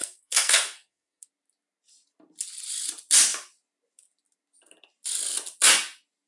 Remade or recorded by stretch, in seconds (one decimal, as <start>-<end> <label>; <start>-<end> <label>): 0.0-1.3 remade; 1.3-6.3 recorded